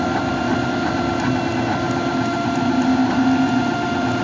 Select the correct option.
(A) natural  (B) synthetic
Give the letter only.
A